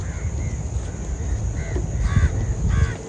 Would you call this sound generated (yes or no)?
no